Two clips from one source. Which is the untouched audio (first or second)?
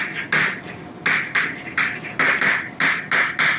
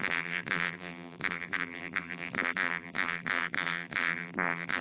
first